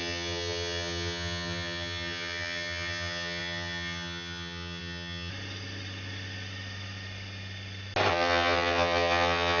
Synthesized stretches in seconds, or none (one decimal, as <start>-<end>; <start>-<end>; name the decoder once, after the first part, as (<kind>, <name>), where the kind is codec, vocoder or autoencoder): 0.0-5.3 (vocoder, HiFi-GAN); 8.1-9.6